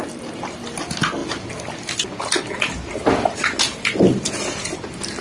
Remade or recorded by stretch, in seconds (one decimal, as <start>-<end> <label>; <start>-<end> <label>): 0.0-5.2 recorded